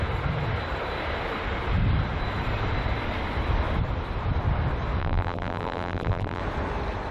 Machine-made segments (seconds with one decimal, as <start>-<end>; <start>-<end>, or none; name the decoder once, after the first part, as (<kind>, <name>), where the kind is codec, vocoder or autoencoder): 5.0-6.4 (vocoder, BigVGAN v2)